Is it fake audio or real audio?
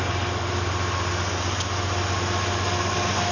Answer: real